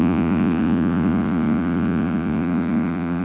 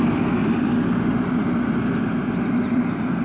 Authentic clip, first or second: second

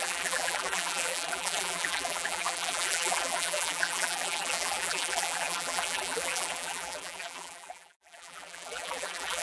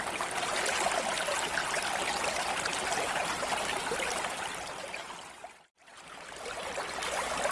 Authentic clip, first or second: second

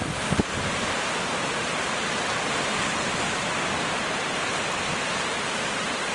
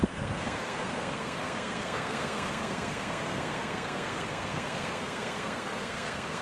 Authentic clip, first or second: first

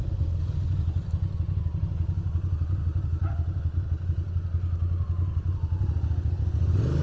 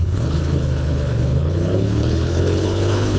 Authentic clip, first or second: first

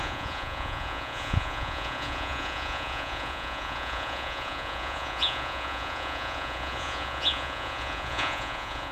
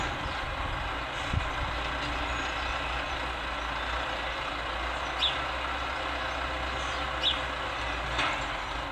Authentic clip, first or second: second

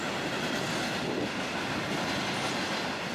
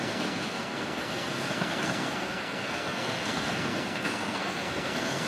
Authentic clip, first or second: first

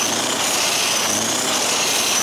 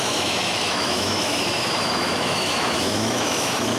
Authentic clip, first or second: first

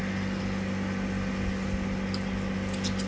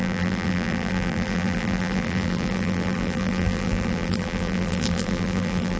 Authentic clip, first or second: first